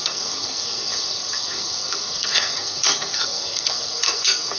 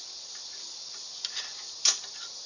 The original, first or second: second